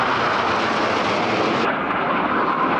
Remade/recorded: recorded